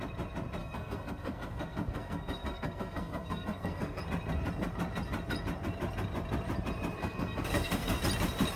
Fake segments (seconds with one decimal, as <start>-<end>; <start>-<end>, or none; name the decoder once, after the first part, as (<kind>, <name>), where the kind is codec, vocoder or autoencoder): 0.6-4.0 (codec, SNAC); 7.0-8.0